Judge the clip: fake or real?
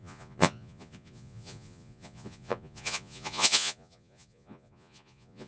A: fake